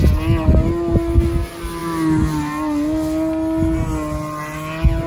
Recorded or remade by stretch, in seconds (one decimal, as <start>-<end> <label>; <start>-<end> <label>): 0.0-5.1 recorded